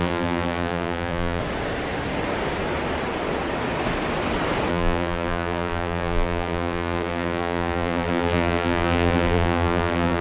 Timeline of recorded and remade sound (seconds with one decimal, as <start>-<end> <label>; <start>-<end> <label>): 0.0-1.4 remade; 1.4-4.7 recorded; 4.7-10.2 remade